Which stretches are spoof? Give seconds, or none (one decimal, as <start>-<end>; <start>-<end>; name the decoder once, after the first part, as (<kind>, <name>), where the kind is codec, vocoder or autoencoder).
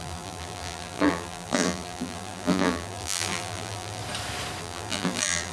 0.0-4.0 (vocoder, BigVGAN v2); 4.6-5.5